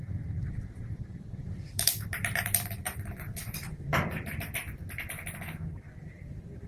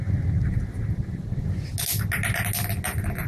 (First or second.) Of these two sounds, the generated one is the first